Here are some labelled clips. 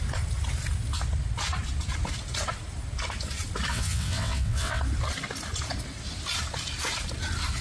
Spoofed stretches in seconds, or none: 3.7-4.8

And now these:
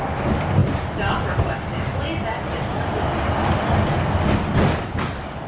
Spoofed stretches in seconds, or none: none

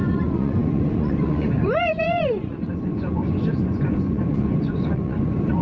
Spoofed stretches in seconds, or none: 0.0-5.6

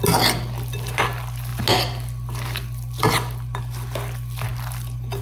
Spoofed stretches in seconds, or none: none